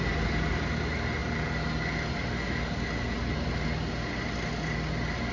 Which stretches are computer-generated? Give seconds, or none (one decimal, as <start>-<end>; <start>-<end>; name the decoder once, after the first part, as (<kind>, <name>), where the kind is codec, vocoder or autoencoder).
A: none